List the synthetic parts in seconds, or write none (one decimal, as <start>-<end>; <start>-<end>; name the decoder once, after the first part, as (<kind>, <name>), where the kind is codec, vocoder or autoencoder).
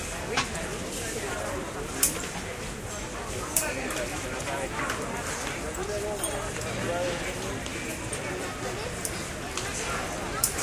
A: none